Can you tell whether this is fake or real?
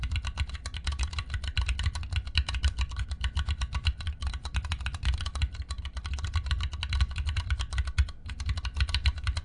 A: real